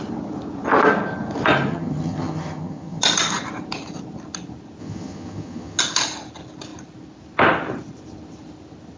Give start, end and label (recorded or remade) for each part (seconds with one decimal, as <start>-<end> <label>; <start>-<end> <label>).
0.0-1.7 recorded; 1.7-3.0 remade; 3.0-4.8 recorded; 4.8-5.8 remade; 5.8-9.0 recorded